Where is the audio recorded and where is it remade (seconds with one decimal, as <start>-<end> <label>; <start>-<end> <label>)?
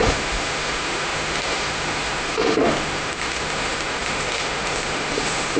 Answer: 0.0-5.6 remade